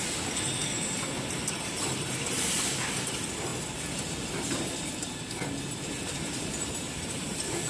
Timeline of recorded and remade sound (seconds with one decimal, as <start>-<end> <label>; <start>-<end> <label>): 0.0-0.6 remade; 0.6-2.3 recorded; 2.3-3.5 remade; 3.5-6.5 recorded; 6.5-7.7 remade